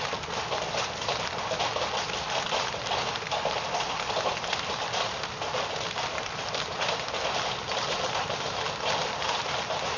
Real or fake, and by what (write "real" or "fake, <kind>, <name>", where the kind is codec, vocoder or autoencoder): real